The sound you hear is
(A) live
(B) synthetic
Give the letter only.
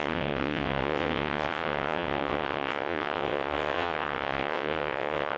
B